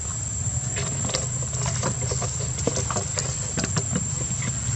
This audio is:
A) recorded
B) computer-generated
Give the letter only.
A